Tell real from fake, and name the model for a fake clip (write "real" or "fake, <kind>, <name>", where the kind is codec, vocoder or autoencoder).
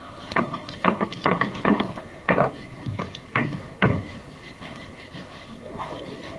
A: fake, codec, SNAC